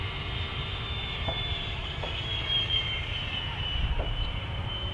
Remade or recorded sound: remade